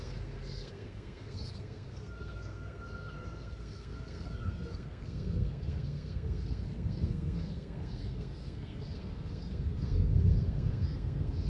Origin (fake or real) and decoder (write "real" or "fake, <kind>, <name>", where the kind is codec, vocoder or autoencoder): fake, codec, SNAC